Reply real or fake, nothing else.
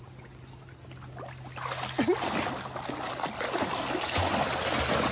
real